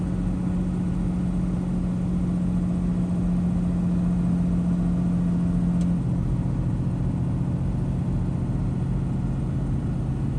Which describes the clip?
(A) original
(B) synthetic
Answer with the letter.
A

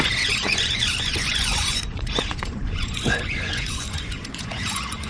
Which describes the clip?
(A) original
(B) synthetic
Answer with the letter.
B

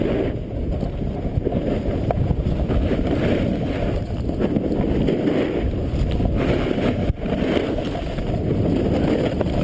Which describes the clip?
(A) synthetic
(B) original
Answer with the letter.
B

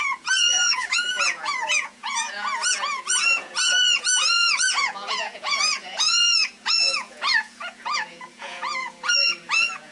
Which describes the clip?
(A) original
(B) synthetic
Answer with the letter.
B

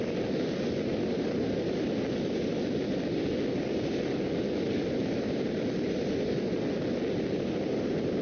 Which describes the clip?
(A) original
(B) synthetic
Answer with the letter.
A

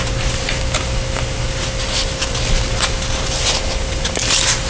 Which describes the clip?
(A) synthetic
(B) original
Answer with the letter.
B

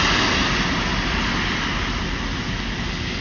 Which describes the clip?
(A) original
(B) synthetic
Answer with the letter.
A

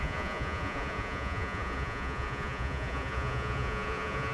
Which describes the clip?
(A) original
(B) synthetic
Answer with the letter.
B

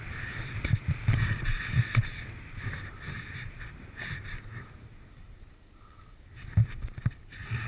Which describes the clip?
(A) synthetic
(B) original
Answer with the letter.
B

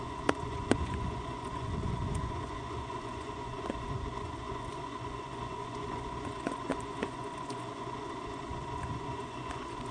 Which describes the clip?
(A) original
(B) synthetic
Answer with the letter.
B